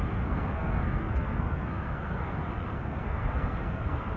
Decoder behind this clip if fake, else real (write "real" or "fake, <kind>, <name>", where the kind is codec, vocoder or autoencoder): fake, codec, SNAC